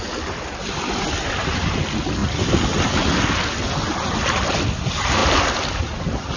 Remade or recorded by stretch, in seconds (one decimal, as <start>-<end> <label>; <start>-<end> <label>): 0.0-6.4 recorded